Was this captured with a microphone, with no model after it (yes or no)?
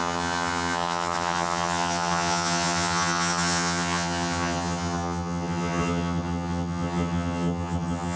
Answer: no